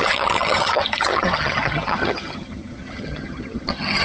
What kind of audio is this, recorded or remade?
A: remade